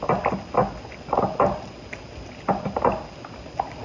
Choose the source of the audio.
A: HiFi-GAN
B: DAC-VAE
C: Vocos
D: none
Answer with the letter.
D